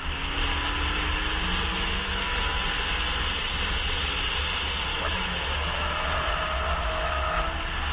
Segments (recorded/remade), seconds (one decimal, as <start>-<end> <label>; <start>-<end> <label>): 0.0-1.7 recorded; 1.7-2.6 remade; 2.6-4.9 recorded; 4.9-5.9 remade; 5.9-6.8 recorded; 6.8-7.4 remade; 7.4-7.9 recorded